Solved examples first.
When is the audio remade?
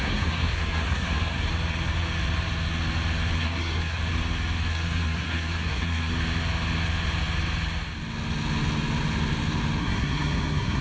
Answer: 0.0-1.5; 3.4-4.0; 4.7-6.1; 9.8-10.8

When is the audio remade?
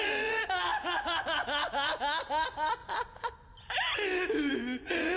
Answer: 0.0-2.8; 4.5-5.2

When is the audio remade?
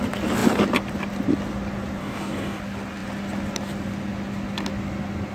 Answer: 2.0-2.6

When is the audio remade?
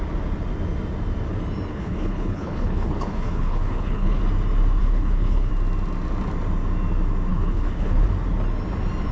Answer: 1.7-4.2; 4.8-5.5; 7.3-8.1